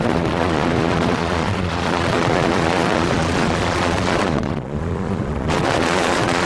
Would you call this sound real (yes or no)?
no